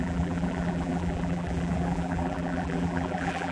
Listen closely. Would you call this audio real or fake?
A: fake